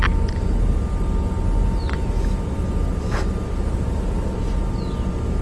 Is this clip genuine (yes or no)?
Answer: yes